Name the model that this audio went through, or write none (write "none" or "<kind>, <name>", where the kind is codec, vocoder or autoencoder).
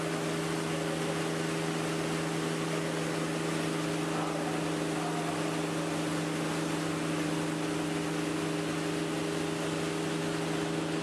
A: none